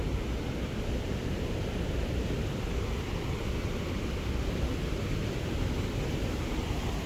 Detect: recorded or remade recorded